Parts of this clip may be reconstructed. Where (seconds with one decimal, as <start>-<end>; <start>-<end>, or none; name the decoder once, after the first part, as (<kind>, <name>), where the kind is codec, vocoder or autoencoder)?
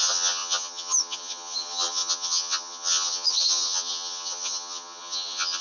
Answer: 0.0-5.6 (vocoder, HiFi-GAN)